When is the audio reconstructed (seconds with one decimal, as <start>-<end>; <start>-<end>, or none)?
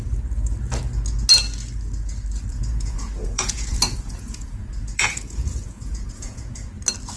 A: 2.5-6.8